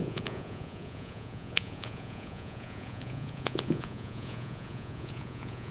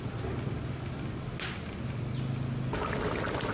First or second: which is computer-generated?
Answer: first